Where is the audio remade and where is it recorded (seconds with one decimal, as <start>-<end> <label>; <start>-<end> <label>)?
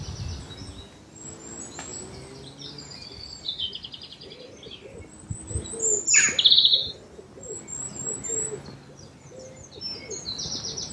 0.0-10.9 recorded